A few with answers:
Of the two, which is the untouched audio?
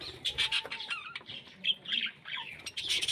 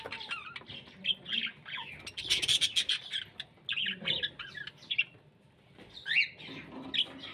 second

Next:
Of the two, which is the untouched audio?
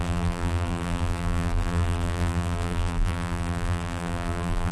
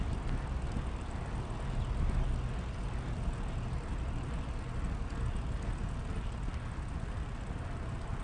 second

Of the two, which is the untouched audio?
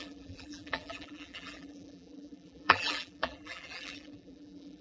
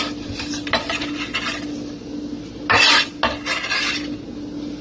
second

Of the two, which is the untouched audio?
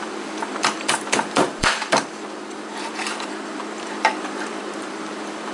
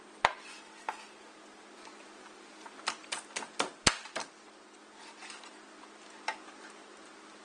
second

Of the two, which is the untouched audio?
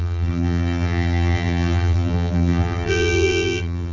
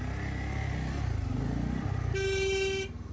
second